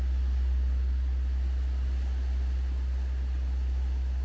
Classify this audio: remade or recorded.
recorded